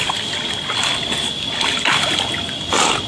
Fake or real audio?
real